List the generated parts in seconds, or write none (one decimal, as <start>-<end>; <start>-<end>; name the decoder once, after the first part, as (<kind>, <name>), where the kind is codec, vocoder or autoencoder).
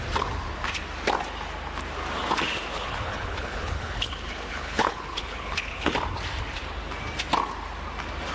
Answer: 2.7-5.9 (codec, HILCodec)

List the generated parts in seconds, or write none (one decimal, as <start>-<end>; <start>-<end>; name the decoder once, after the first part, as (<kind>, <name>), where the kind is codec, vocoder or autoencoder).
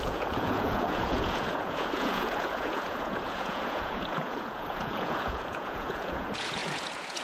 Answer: 0.0-7.2 (vocoder, Vocos)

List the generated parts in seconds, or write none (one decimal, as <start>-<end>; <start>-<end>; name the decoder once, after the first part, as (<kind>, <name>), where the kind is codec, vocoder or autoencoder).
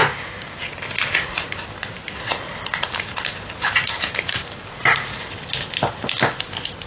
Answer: 2.3-5.3 (vocoder, BigVGAN v2)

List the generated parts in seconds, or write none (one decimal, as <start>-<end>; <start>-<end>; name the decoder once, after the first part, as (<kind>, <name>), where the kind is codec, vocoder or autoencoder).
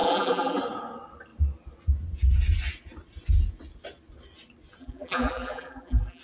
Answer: 0.0-0.6 (vocoder, BigVGAN v2); 4.8-6.2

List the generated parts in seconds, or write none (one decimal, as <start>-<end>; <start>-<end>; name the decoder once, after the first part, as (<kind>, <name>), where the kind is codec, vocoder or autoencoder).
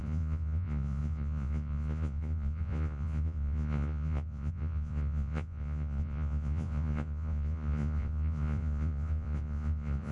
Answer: 0.0-10.1 (vocoder, Vocos)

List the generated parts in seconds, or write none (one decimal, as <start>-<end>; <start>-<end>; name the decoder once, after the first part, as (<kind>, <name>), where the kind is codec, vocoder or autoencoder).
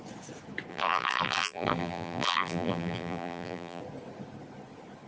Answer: 0.7-3.8 (vocoder, BigVGAN v2)